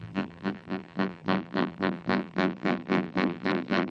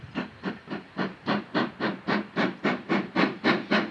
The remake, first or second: first